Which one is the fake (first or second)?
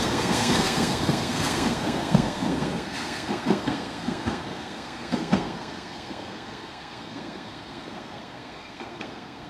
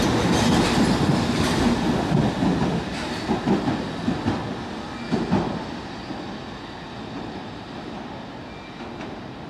first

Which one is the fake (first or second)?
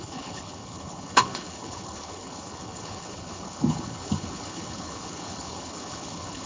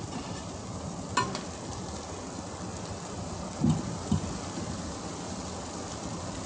first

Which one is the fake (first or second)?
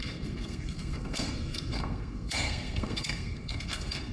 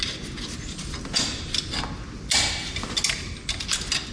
first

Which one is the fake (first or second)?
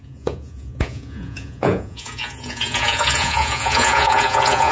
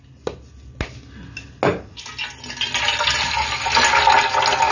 first